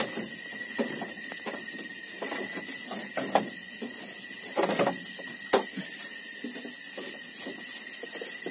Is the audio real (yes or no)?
yes